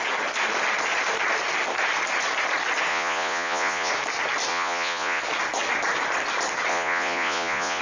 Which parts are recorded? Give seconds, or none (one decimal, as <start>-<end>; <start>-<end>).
0.0-2.9; 3.9-4.5; 5.2-6.7